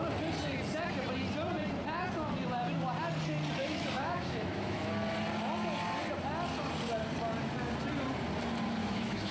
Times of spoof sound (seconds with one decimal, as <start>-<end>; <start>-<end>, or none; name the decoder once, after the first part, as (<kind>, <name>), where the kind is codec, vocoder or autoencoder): 3.6-4.9 (autoencoder, DAC-VAE); 8.8-9.3